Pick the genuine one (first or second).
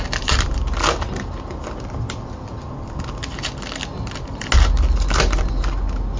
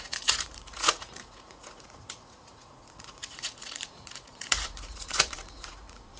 first